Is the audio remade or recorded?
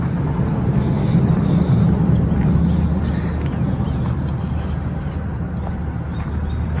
recorded